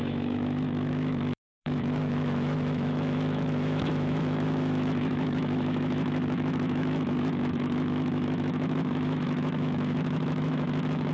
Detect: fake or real fake